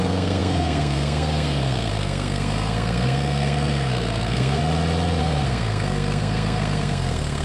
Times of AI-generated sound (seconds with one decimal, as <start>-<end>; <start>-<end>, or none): 0.0-4.6; 5.2-7.4